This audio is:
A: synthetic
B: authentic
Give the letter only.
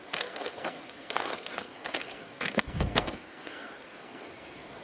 A